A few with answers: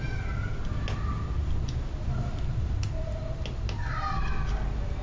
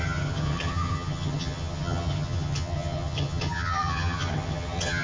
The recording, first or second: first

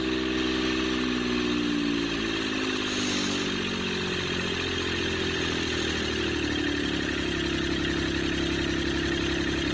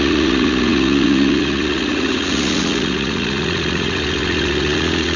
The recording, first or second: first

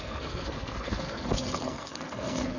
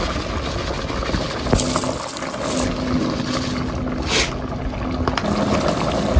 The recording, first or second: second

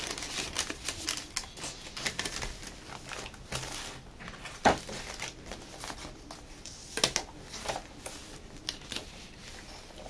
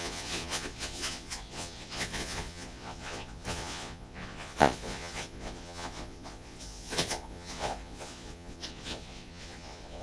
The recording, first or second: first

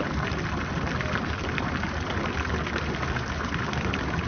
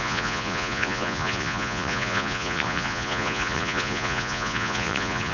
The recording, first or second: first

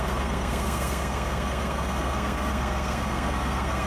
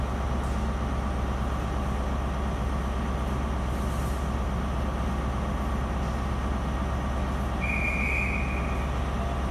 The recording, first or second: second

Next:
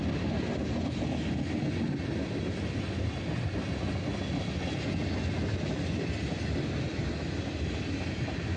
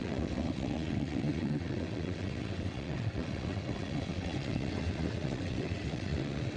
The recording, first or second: first